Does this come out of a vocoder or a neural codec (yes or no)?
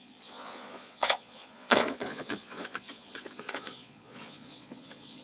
yes